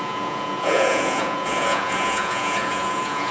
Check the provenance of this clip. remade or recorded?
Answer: remade